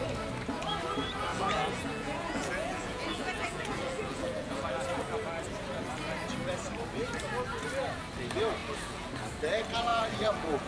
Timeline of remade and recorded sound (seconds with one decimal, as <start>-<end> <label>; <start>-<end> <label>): 0.0-1.3 recorded; 1.3-4.7 remade; 4.7-8.6 recorded; 8.6-9.1 remade; 9.1-9.9 recorded; 9.9-10.7 remade